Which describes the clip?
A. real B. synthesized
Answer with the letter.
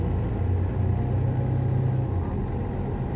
A